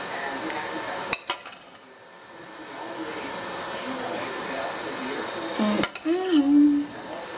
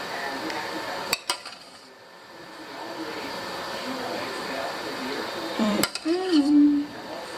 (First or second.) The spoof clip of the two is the second